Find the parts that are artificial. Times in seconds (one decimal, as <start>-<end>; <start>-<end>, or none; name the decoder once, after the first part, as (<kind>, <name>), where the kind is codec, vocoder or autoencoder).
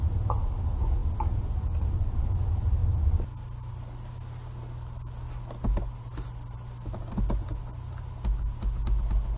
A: none